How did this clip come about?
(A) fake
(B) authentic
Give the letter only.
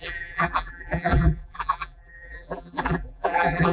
A